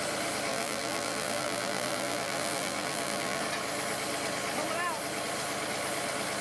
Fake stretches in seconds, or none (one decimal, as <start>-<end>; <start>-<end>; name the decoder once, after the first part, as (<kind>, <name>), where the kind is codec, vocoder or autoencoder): 0.5-3.4 (vocoder, BigVGAN v2)